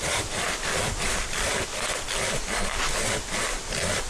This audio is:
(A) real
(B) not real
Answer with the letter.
A